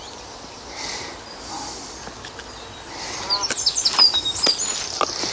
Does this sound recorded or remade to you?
recorded